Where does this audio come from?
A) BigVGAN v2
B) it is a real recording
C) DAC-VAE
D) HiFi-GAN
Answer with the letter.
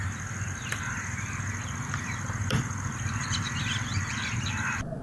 A